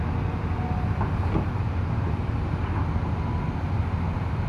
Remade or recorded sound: recorded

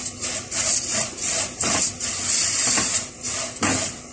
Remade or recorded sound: recorded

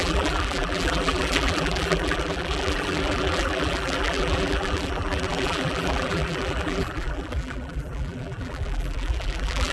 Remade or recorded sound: remade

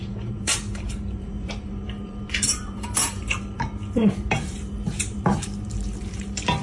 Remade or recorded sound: remade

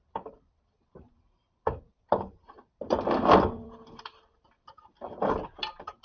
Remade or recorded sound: remade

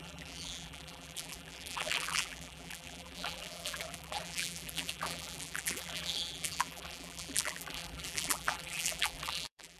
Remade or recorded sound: remade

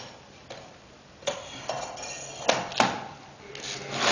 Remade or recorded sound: recorded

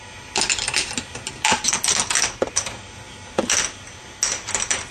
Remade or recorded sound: recorded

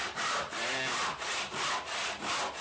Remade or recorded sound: recorded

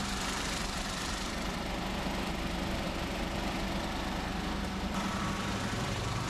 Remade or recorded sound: remade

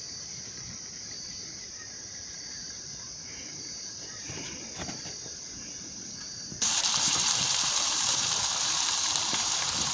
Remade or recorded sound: remade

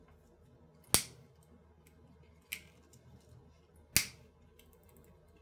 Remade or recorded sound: recorded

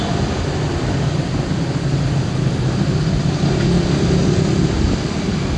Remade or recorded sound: remade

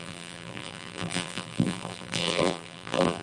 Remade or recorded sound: remade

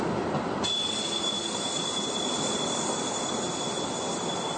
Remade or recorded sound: recorded